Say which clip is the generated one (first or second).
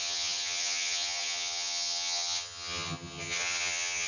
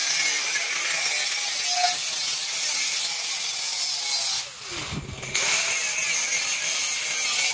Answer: first